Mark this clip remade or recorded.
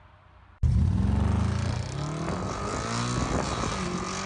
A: recorded